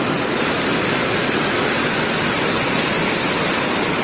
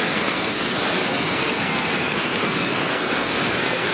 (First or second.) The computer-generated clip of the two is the second